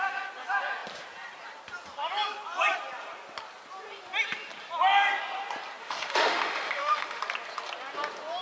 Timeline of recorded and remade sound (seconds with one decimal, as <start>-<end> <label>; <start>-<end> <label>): 0.0-5.8 recorded; 5.8-7.2 remade; 7.2-8.4 recorded